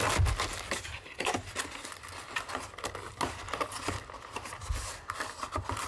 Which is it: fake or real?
real